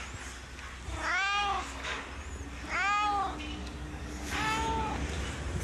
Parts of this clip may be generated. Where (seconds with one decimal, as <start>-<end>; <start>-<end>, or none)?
1.4-2.0; 3.6-4.3